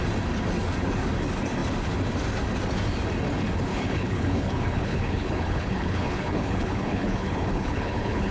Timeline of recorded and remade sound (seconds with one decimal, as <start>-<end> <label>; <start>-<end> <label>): 0.0-3.7 recorded; 3.7-8.3 remade